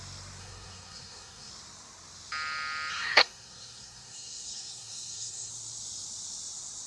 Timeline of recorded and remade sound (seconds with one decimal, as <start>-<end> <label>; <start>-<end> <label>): 0.0-0.4 recorded; 0.4-1.5 remade; 1.5-2.9 recorded; 2.9-5.5 remade; 5.5-6.9 recorded